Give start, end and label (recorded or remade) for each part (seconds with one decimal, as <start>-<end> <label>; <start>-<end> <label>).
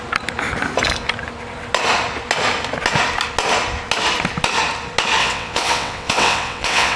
0.0-5.2 recorded; 5.2-7.0 remade